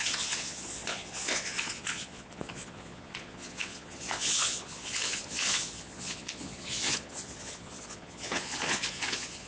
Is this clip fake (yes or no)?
yes